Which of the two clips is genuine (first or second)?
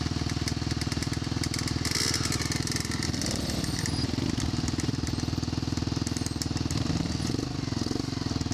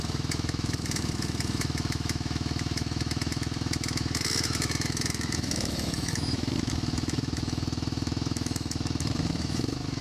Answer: first